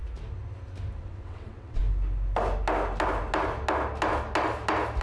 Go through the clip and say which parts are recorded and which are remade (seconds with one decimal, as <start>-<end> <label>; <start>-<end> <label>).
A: 0.0-1.0 recorded; 1.0-1.8 remade; 1.8-5.0 recorded